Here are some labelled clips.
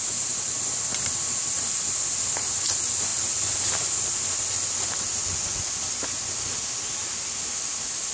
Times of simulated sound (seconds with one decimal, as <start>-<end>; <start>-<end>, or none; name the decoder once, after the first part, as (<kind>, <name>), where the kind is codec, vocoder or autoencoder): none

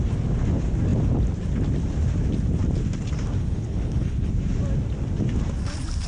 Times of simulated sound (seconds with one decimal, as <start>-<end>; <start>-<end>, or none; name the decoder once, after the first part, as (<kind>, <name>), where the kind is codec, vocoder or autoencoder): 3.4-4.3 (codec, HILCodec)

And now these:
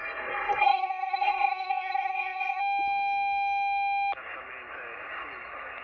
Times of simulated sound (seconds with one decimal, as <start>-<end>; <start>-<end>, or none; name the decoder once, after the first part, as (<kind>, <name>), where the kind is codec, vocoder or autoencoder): 0.0-2.6 (codec, SNAC)